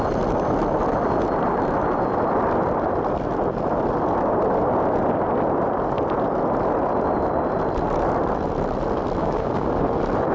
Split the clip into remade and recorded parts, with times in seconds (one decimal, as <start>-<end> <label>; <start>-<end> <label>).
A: 0.0-9.2 recorded; 9.2-9.7 remade; 9.7-10.3 recorded